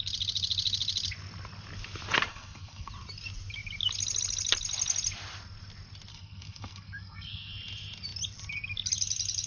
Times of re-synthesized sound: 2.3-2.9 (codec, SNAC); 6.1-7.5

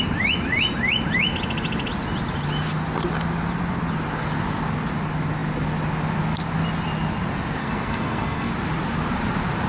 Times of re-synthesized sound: 7.6-8.5 (codec, SNAC)

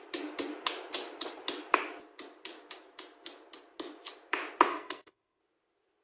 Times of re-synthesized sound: 4.7-5.4 (codec, SNAC)

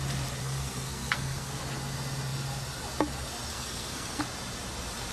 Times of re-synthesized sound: 0.4-1.6 (codec, SNAC); 3.5-4.2